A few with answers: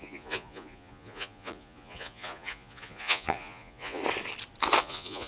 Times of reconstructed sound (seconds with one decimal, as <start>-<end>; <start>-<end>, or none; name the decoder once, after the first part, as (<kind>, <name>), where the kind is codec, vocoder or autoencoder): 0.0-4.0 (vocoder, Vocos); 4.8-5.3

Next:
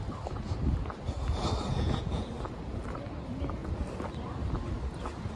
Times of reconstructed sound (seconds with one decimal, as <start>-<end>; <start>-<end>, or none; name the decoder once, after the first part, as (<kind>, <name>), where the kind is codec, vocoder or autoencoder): 1.7-2.3 (vocoder, Vocos)

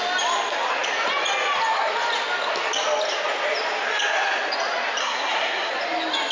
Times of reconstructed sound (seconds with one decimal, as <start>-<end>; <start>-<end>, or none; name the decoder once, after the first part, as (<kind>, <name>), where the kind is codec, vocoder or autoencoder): 5.0-5.7 (codec, SNAC)

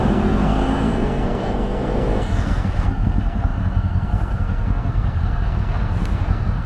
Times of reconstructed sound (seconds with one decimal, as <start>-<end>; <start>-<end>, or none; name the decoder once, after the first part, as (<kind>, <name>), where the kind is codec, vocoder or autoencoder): 0.0-6.7 (codec, SNAC)

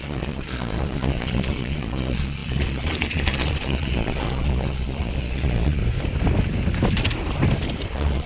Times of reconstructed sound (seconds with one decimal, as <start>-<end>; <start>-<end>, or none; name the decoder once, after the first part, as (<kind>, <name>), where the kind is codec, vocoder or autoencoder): 0.0-5.8 (vocoder, Vocos); 7.9-8.3

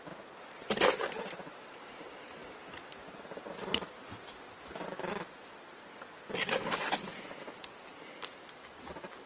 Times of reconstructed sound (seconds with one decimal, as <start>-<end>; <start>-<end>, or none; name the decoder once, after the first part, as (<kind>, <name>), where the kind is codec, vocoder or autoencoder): none

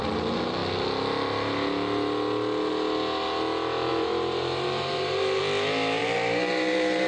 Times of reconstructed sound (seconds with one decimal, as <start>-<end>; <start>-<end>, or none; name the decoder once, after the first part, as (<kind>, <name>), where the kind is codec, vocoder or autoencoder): 3.9-5.4 (vocoder, BigVGAN v2); 6.0-7.1

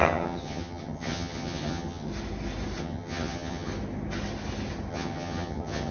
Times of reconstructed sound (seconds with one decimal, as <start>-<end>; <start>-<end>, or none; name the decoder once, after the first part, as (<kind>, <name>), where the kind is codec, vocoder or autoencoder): 0.0-2.1 (vocoder, HiFi-GAN); 2.8-3.7; 4.9-5.9